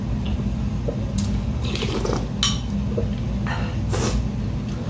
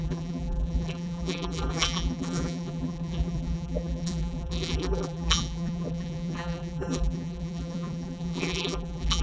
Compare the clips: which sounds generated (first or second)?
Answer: second